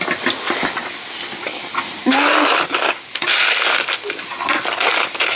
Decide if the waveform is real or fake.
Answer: real